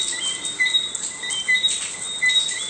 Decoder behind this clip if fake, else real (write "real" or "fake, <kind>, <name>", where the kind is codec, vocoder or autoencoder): real